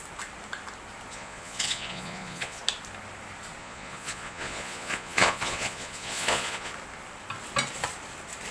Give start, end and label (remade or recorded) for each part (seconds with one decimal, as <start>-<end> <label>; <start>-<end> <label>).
0.0-1.1 recorded; 1.1-2.6 remade; 2.6-3.6 recorded; 3.6-6.7 remade; 6.7-8.5 recorded